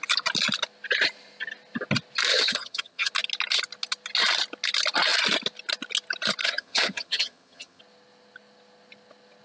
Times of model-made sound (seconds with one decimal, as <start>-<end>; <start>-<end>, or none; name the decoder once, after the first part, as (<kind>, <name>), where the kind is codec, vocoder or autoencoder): 2.3-3.1 (vocoder, HiFi-GAN); 6.4-7.8